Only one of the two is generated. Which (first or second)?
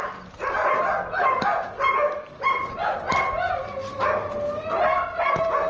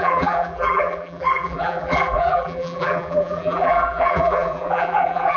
second